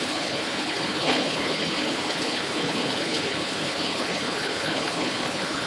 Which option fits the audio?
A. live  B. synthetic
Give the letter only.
B